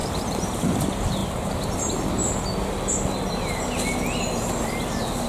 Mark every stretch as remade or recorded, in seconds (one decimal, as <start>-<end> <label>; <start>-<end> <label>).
0.0-5.3 recorded